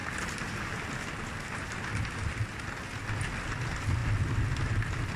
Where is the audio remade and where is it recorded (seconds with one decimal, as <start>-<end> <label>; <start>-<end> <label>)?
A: 0.0-5.2 recorded